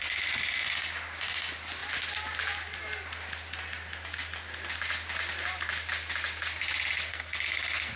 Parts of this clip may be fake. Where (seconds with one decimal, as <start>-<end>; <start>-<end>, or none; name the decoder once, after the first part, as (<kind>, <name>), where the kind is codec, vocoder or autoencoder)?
7.1-8.0 (codec, SNAC)